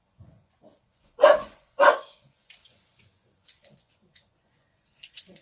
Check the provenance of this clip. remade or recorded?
remade